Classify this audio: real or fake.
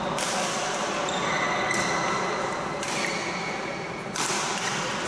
real